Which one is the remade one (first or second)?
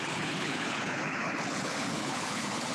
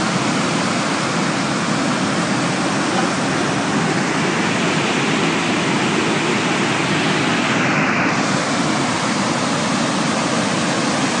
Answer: first